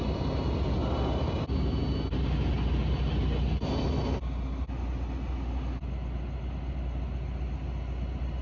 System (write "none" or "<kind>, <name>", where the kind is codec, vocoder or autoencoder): none